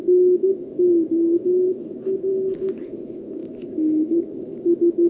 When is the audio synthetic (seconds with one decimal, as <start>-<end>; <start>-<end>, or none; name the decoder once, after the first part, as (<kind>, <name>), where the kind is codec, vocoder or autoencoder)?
0.0-5.1 (autoencoder, DAC-VAE)